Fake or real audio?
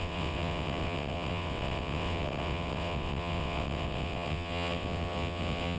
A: fake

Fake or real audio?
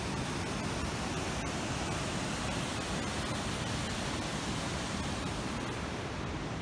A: real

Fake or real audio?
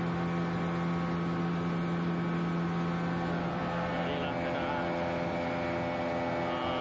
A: real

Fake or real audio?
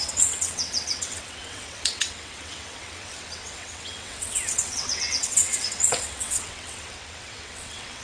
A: fake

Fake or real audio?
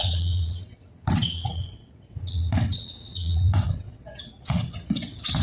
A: fake